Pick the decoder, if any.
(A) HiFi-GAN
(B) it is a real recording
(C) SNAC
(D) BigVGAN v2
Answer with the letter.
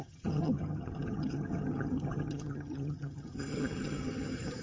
A